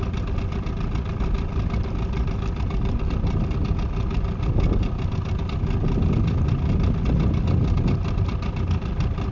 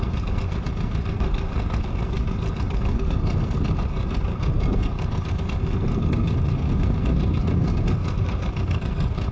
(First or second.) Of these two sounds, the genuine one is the first